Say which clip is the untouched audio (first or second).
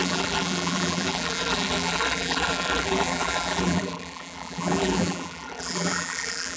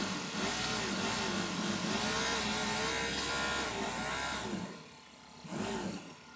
second